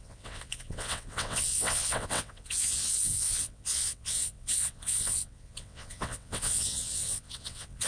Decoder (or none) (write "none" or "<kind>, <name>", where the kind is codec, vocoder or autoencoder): vocoder, WaveNeXt